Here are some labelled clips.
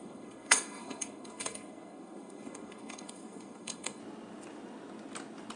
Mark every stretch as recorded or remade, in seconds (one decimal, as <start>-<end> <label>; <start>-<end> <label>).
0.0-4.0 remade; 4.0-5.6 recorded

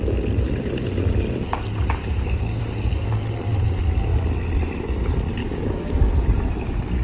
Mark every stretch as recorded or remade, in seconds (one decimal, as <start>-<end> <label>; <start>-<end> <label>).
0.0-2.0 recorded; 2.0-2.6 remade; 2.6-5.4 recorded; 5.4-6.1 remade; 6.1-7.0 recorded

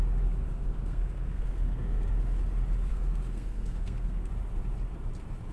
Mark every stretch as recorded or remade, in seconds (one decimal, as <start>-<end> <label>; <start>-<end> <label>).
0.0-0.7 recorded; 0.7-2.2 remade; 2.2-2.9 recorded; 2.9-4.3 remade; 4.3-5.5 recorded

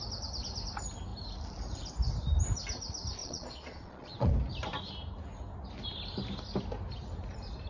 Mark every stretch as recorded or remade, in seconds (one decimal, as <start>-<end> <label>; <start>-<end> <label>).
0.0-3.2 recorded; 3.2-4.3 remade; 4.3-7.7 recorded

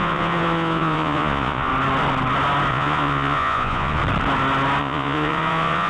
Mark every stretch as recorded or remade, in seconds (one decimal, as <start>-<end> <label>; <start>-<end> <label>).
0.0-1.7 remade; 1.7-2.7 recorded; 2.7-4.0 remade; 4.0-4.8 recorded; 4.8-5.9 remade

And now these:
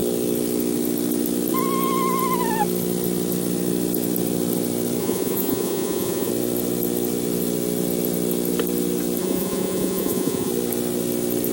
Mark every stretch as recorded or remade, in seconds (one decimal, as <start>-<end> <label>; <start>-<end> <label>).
0.0-5.0 recorded; 5.0-6.3 remade; 6.3-9.2 recorded; 9.2-10.5 remade; 10.5-11.5 recorded

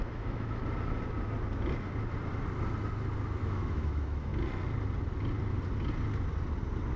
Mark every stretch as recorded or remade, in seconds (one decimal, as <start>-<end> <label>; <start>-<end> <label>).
0.0-0.6 remade; 0.6-3.4 recorded; 3.4-4.3 remade; 4.3-7.0 recorded

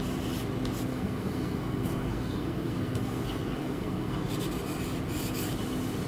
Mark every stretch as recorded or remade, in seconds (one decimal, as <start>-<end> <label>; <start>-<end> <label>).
0.0-0.9 recorded; 0.9-4.3 remade; 4.3-6.1 recorded